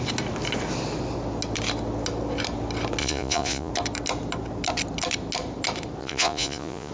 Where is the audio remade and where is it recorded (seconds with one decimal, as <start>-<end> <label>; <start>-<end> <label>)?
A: 0.0-3.0 recorded; 3.0-3.7 remade; 3.7-6.0 recorded; 6.0-6.9 remade